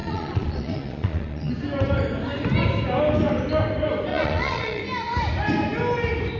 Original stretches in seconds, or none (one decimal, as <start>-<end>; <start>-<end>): 1.5-4.1; 4.8-6.4